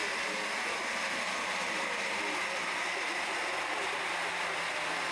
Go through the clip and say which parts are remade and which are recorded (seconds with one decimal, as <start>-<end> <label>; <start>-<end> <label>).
0.0-5.1 recorded